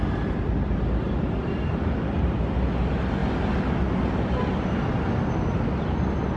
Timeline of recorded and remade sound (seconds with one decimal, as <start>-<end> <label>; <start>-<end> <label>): 0.0-2.4 remade; 2.4-6.4 recorded